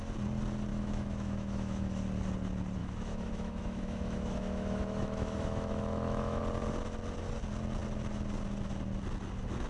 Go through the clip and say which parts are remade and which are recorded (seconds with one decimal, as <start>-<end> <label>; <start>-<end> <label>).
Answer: 0.0-0.7 recorded; 0.7-1.9 remade; 1.9-2.8 recorded; 2.8-6.4 remade; 6.4-9.7 recorded